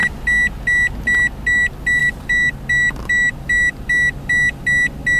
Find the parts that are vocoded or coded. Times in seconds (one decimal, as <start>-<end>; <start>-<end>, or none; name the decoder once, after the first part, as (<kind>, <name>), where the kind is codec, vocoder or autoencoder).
none